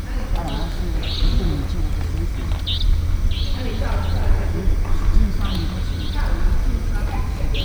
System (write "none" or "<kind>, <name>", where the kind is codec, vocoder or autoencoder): none